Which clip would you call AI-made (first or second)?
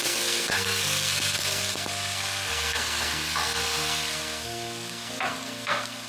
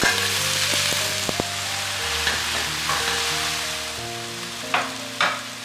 first